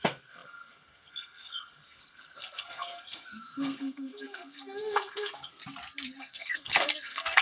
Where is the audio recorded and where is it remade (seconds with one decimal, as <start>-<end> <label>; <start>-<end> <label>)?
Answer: 0.0-5.6 remade; 5.6-6.2 recorded; 6.2-7.4 remade